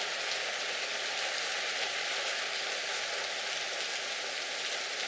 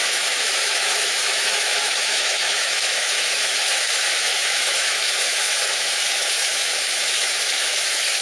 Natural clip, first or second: first